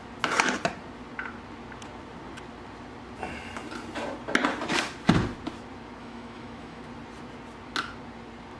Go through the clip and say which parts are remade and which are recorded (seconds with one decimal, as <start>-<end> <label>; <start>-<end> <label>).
0.0-6.0 recorded; 6.0-6.8 remade; 6.8-8.6 recorded